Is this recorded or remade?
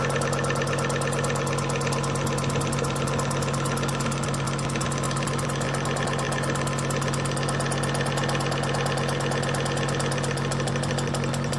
recorded